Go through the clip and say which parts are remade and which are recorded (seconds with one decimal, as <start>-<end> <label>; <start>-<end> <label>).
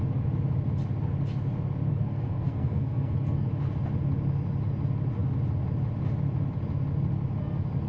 0.0-1.9 recorded; 1.9-3.5 remade; 3.5-7.9 recorded